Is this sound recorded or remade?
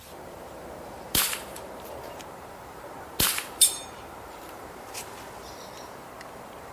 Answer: remade